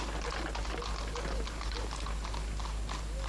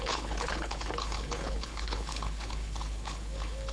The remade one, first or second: second